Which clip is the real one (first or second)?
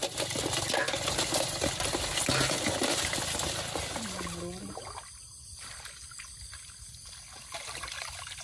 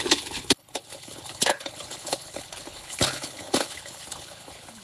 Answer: first